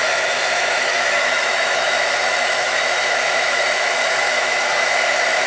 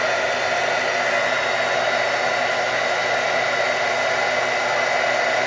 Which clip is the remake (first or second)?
first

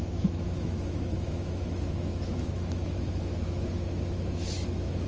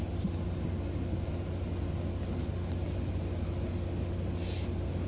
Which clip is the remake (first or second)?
first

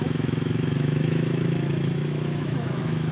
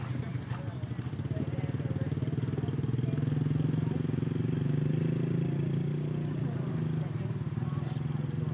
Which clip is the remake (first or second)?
first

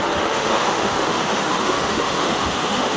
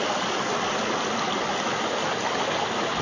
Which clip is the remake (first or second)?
first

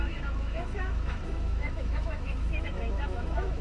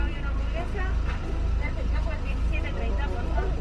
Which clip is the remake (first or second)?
first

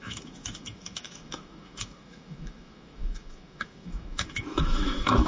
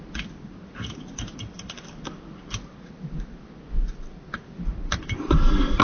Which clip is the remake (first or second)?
first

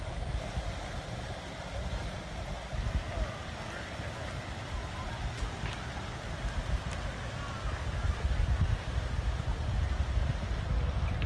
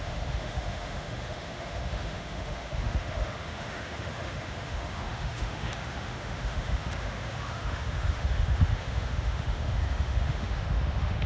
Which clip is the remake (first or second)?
second